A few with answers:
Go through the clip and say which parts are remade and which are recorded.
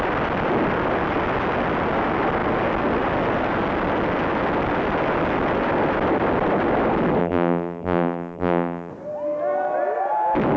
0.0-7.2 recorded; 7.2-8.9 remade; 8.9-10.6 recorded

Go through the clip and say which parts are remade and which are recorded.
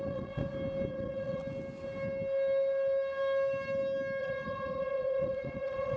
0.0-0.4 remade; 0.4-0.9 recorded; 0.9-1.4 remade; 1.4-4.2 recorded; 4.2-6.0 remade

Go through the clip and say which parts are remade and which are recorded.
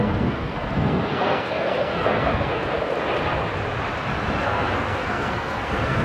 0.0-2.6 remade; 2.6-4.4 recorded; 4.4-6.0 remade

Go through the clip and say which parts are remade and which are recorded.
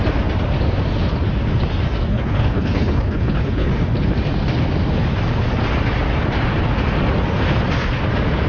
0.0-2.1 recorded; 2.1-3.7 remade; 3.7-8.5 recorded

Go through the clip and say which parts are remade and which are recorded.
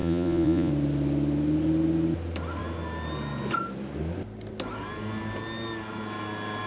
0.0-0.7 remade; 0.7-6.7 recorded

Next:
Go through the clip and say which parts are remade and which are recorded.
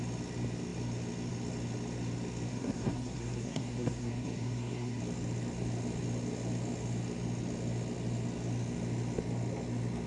0.0-2.5 recorded; 2.5-5.0 remade; 5.0-10.1 recorded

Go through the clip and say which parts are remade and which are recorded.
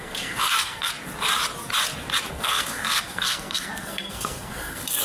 0.0-0.9 remade; 0.9-2.3 recorded; 2.3-5.0 remade